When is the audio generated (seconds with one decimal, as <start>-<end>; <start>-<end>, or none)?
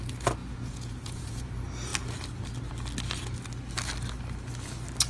0.4-1.5